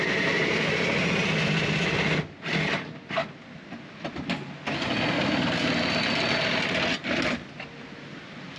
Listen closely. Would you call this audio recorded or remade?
recorded